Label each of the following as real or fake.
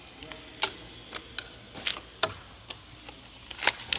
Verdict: real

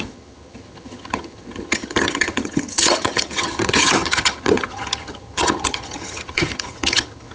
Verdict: fake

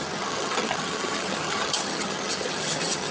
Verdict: fake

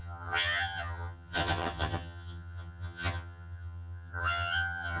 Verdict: fake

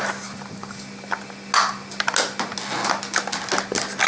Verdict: real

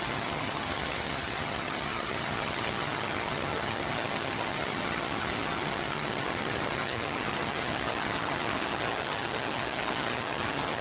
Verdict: fake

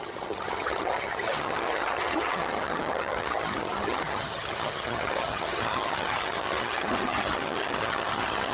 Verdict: fake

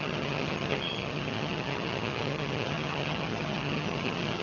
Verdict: fake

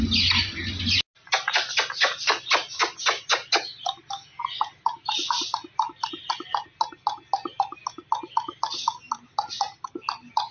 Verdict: real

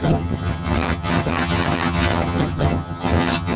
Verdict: fake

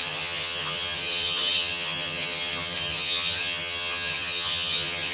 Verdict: fake